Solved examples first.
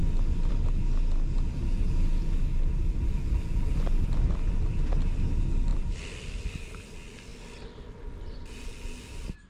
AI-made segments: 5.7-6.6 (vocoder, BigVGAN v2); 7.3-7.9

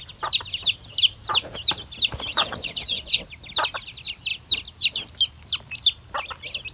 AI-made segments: 2.3-3.2 (vocoder, Vocos)

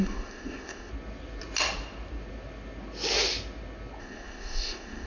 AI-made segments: 0.0-0.9 (codec, ZipCodec); 4.0-5.1

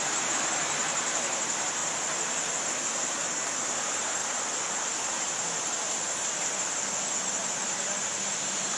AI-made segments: 0.0-1.8 (vocoder, BigVGAN v2); 2.7-4.2

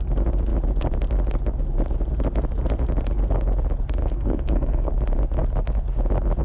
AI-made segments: 4.0-4.9 (codec, SNAC)

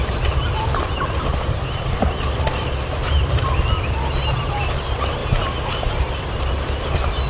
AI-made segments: none